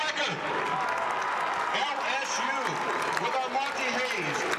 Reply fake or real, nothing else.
real